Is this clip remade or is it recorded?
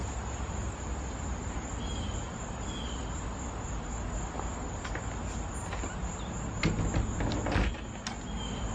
recorded